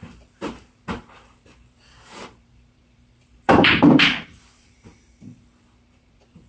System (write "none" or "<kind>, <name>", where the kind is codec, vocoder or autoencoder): vocoder, BigVGAN v2